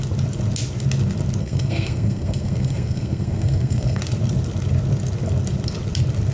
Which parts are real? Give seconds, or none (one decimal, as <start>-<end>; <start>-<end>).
0.0-1.4; 4.0-6.3